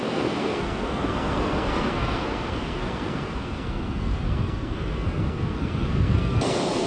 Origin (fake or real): fake